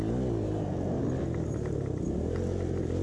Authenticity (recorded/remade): recorded